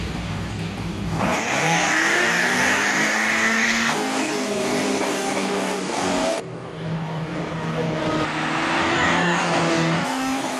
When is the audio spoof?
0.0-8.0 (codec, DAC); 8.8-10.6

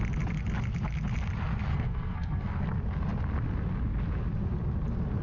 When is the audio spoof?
1.7-2.6 (codec, SNAC)

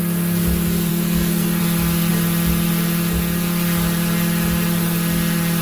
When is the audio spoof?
0.9-1.6 (codec, SNAC)

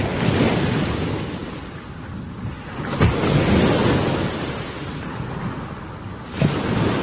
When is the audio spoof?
none